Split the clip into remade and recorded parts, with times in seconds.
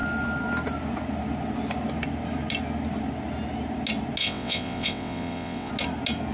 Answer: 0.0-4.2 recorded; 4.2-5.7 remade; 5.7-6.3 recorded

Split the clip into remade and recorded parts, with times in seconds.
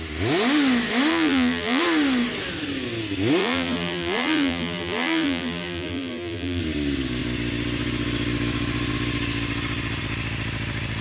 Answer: 0.0-1.1 recorded; 1.1-1.8 remade; 1.8-3.4 recorded; 3.4-6.6 remade; 6.6-11.0 recorded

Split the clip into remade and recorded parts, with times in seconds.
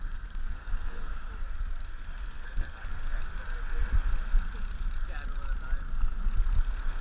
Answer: 0.0-1.1 remade; 1.1-2.2 recorded; 2.2-3.2 remade; 3.2-7.0 recorded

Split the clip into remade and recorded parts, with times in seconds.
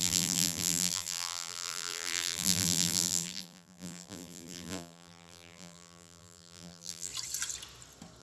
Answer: 0.0-7.1 remade; 7.1-8.2 recorded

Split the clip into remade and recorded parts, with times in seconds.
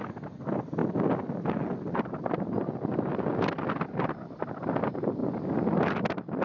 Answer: 0.0-6.4 recorded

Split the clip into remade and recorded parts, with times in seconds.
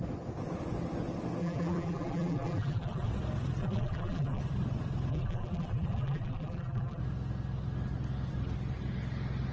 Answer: 0.0-1.4 recorded; 1.4-3.1 remade; 3.1-3.6 recorded; 3.6-4.4 remade; 4.4-5.1 recorded; 5.1-7.0 remade; 7.0-9.5 recorded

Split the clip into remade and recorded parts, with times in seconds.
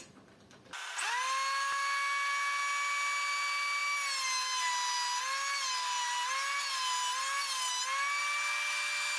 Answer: 0.0-9.2 recorded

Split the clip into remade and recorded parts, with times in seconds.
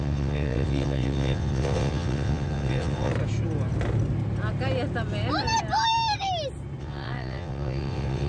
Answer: 0.0-3.1 remade; 3.1-6.8 recorded; 6.8-8.3 remade